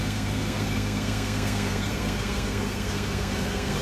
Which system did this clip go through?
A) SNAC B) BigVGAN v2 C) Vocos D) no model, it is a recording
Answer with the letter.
A